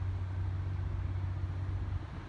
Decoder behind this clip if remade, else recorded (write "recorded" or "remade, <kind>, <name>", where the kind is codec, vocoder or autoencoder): recorded